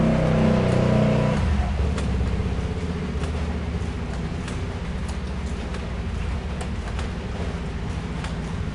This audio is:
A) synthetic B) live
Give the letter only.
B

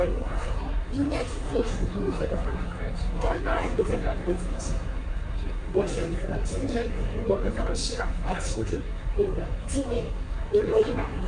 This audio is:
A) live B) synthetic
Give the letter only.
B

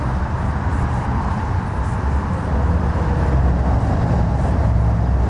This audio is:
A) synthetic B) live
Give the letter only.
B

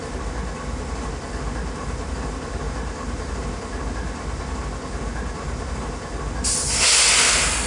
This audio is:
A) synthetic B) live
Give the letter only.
B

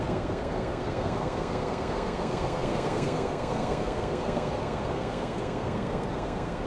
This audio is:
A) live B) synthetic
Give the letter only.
B